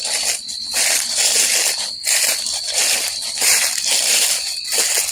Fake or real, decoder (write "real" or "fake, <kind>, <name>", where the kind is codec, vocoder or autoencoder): real